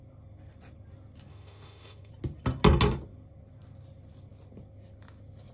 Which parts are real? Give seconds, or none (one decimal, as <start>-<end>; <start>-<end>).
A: 0.0-1.3; 2.1-5.5